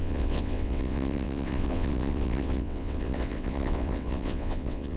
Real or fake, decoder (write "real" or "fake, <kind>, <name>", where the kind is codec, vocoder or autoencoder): fake, vocoder, WaveNeXt